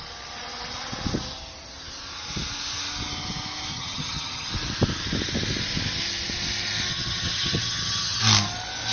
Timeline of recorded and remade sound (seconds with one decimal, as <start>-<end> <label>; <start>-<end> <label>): 0.0-3.7 recorded; 3.7-4.5 remade; 4.5-6.9 recorded; 6.9-8.2 remade; 8.2-8.9 recorded